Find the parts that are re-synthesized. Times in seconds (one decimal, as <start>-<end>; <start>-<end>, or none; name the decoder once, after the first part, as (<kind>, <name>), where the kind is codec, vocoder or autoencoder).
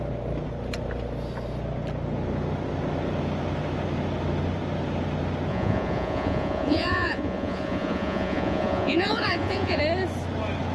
5.5-9.8 (vocoder, Vocos)